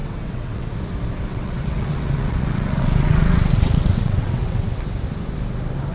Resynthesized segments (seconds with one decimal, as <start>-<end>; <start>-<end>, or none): 0.0-0.7; 1.3-4.8